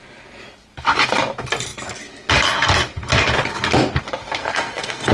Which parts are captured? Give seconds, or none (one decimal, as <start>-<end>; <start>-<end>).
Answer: 0.0-4.4